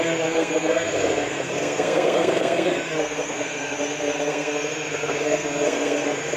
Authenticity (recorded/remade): remade